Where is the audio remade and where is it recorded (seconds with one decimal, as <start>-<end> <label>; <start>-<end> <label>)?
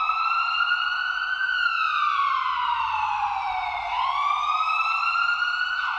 0.0-6.0 recorded